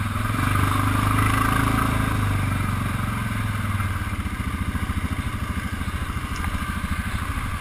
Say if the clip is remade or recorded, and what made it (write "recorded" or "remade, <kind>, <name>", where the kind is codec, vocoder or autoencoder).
recorded